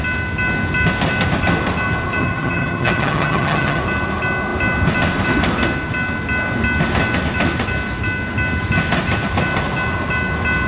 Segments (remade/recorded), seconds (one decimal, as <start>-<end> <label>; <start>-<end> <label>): 0.0-2.2 recorded; 2.2-3.8 remade; 3.8-10.7 recorded